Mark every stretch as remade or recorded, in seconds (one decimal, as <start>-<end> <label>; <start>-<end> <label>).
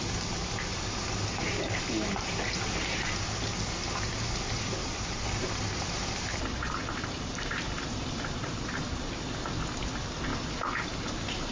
0.0-4.8 recorded; 4.8-9.1 remade; 9.1-10.3 recorded; 10.3-11.5 remade